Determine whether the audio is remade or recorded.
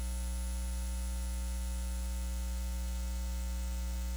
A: recorded